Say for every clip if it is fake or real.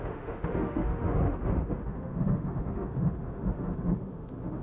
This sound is fake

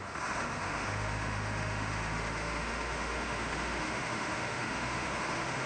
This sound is fake